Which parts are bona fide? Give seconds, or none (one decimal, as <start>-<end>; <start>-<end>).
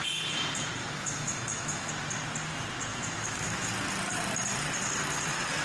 0.0-0.8; 1.9-2.9; 3.7-5.6